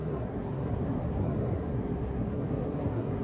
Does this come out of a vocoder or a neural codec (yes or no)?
yes